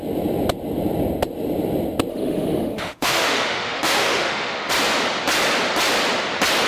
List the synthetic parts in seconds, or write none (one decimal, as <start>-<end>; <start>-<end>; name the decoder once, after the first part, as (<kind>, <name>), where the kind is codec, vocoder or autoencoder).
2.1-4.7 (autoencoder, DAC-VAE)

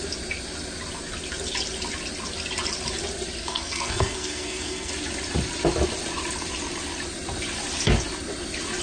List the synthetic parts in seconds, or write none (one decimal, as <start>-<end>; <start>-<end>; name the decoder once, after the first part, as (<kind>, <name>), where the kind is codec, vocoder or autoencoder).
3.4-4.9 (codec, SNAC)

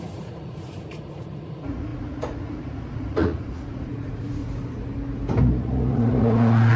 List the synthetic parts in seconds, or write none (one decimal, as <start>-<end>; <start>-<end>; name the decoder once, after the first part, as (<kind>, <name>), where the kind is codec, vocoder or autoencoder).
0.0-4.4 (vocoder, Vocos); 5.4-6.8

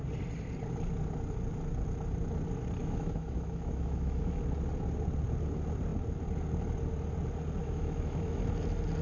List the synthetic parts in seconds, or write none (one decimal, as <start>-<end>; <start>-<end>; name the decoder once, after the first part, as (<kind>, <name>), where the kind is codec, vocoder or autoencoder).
2.8-4.4 (autoencoder, DAC-VAE); 7.6-8.4

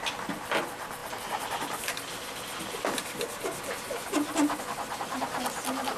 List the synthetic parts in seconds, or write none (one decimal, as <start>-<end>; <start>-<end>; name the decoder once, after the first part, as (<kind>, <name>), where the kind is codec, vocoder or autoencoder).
none

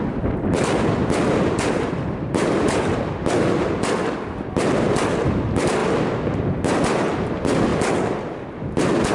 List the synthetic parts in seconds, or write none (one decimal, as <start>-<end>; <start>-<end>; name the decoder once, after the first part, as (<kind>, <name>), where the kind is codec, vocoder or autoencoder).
none

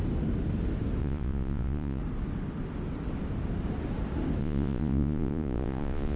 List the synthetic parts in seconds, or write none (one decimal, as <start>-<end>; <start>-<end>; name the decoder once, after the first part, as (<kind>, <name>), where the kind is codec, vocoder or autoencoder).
1.0-2.0 (vocoder, Vocos); 4.4-6.2

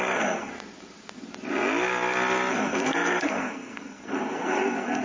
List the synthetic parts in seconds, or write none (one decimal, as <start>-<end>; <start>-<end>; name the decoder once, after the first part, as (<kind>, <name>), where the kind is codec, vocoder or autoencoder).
0.0-0.5 (codec, SNAC); 2.5-5.0